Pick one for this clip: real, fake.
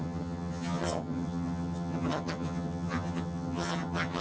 fake